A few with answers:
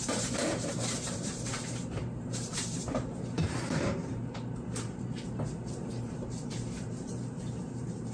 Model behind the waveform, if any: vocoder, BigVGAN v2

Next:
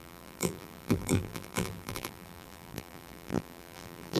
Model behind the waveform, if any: vocoder, BigVGAN v2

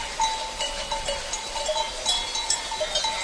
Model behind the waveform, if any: none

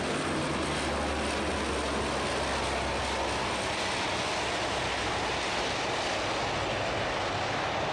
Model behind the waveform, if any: none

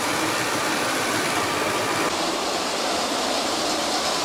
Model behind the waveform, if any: vocoder, BigVGAN v2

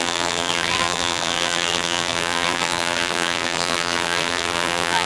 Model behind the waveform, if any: vocoder, BigVGAN v2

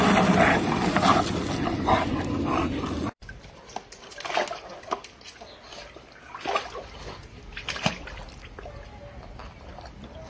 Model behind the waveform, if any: none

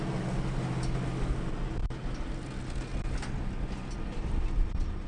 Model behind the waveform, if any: none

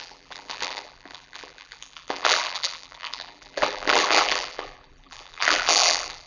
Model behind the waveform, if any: vocoder, BigVGAN v2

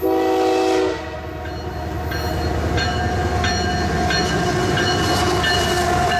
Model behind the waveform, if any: none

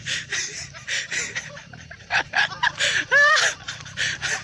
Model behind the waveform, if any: vocoder, BigVGAN v2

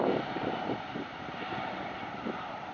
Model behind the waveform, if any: vocoder, BigVGAN v2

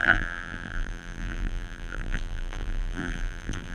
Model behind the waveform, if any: vocoder, BigVGAN v2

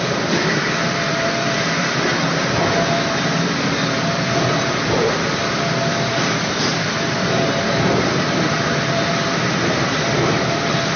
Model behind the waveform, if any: vocoder, BigVGAN v2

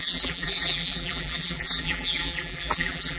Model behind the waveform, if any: vocoder, BigVGAN v2